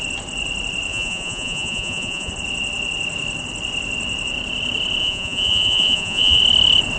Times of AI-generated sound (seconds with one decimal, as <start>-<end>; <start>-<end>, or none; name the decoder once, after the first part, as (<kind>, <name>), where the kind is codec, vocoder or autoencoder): 0.9-2.3 (vocoder, Vocos); 5.0-6.4